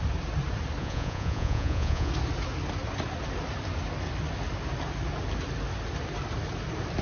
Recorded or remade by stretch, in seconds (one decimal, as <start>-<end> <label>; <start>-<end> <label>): 0.0-0.8 recorded; 0.8-2.1 remade; 2.1-7.0 recorded